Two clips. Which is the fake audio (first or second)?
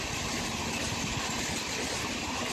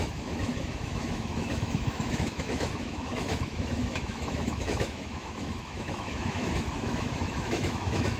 second